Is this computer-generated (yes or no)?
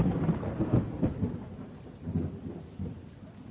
no